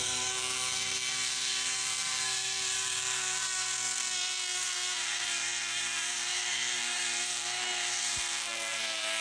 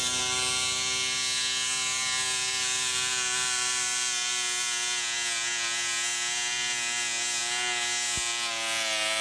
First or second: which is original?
second